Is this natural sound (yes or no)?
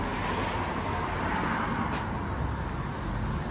yes